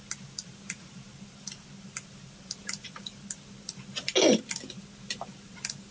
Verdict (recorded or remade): recorded